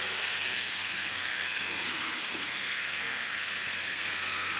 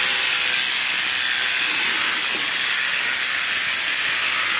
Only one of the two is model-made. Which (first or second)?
first